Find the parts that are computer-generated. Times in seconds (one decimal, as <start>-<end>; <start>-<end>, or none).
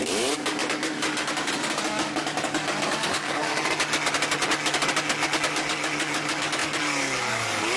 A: 0.0-3.5; 5.5-7.8